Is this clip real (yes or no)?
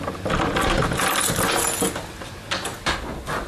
yes